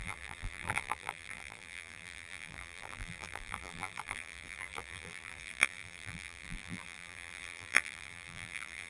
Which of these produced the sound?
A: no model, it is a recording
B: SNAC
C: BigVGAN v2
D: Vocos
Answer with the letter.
C